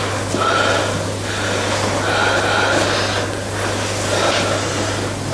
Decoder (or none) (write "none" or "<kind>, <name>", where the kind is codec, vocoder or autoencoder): none